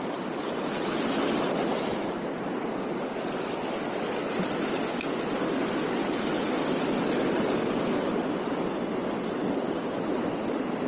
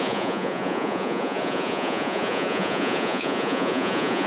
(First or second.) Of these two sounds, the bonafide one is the first